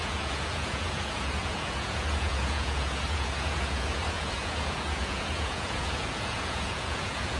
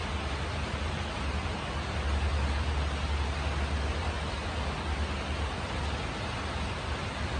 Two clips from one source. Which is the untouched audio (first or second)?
second